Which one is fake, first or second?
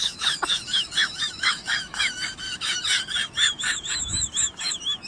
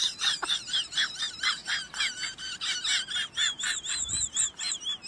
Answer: first